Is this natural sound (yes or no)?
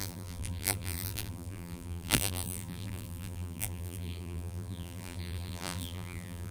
no